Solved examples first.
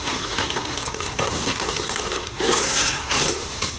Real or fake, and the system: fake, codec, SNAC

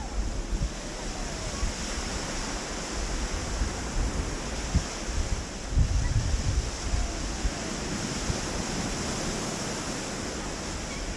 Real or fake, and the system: real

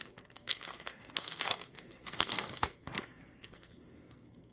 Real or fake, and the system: fake, codec, SNAC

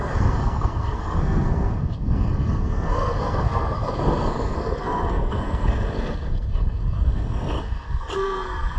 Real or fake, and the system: fake, codec, SNAC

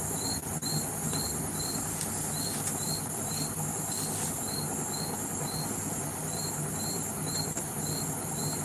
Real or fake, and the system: real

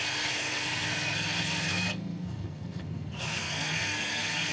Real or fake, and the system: fake, codec, SNAC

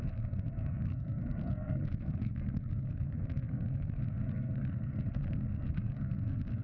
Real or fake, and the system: fake, codec, SNAC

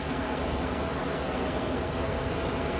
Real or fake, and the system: fake, codec, SNAC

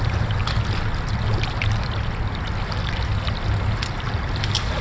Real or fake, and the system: real